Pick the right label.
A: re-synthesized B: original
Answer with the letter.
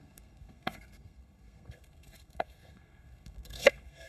A